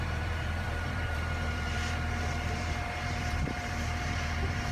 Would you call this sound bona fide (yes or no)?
no